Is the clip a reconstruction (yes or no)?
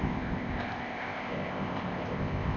yes